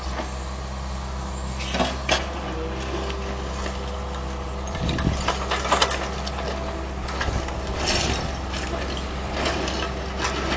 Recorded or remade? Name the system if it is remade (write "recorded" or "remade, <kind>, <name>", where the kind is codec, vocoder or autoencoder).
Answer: recorded